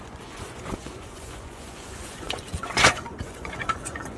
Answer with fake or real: fake